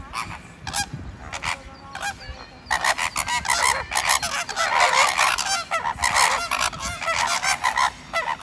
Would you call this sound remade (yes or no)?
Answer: no